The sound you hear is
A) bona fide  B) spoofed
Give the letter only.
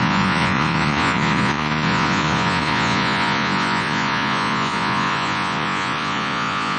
B